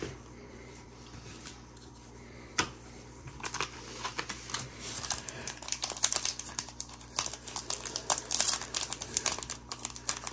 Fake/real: fake